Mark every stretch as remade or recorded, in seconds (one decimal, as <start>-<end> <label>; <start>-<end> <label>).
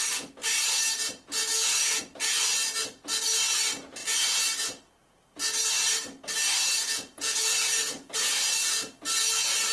0.0-1.4 recorded; 1.4-2.0 remade; 2.0-6.8 recorded; 6.8-8.3 remade; 8.3-9.7 recorded